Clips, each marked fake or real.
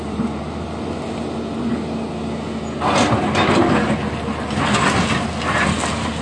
real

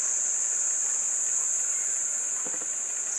real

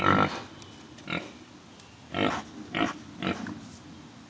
real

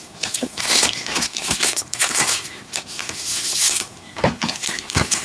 fake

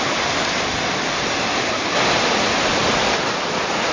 real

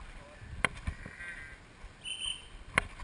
real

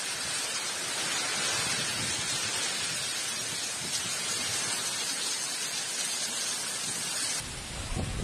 real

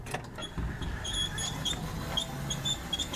real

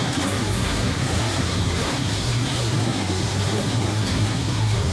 fake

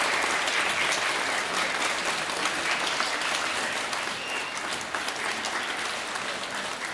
real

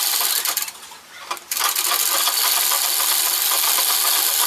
real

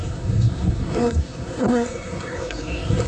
fake